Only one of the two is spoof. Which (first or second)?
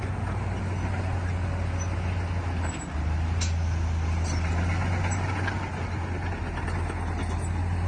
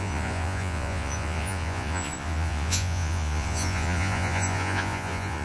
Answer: second